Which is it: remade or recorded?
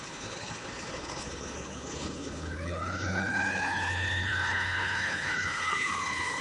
remade